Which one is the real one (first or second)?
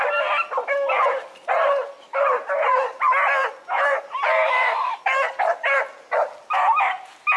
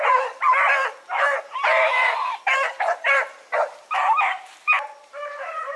first